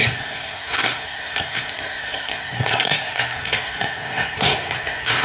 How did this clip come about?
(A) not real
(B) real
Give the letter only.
A